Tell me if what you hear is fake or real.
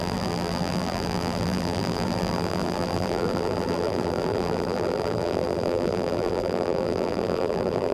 fake